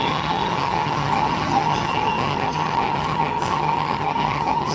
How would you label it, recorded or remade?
remade